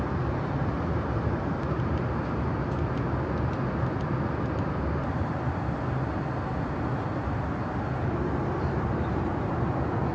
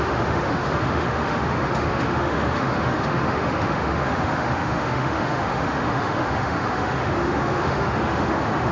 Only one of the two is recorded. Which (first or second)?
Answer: first